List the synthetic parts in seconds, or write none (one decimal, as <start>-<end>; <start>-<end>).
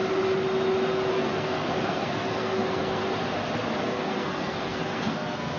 1.1-3.0; 3.8-5.6